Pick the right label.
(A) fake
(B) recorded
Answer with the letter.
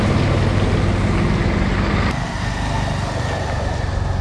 B